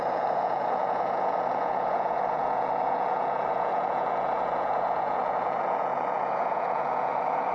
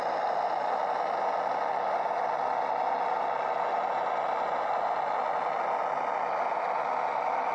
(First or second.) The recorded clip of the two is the second